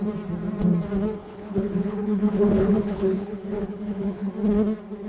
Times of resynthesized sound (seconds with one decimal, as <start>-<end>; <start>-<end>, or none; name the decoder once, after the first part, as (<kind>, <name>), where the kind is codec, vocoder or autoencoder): 1.2-4.3 (codec, HILCodec)